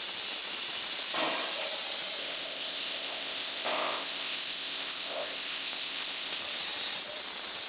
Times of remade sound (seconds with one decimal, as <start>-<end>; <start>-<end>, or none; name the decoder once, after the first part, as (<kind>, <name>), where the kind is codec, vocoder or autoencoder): 2.2-6.4 (codec, ZipCodec)